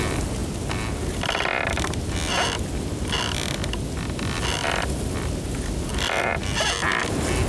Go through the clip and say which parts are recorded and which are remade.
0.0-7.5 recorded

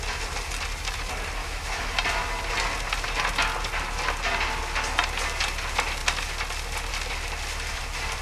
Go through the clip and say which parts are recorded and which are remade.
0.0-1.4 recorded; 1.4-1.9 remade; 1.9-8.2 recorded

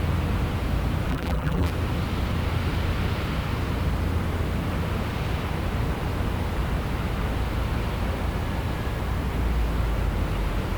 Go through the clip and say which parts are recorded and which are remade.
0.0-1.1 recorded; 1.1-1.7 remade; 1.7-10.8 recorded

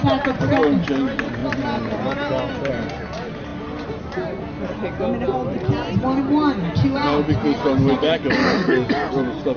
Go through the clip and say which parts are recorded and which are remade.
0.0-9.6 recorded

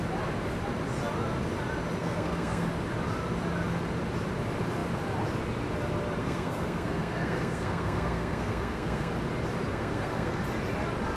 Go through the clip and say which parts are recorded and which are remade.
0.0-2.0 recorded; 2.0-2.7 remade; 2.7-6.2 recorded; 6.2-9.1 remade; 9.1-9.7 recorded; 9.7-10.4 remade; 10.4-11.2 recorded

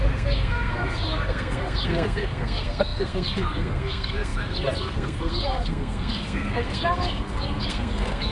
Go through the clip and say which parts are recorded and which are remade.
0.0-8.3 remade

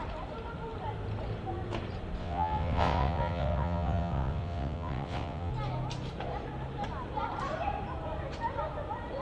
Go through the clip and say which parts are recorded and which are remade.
0.0-2.2 recorded; 2.2-5.5 remade; 5.5-9.2 recorded